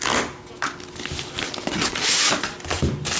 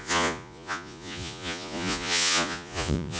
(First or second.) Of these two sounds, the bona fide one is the first